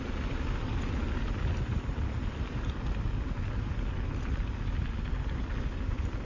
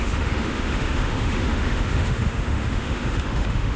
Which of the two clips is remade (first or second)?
second